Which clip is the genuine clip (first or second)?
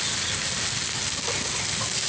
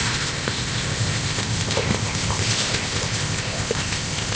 first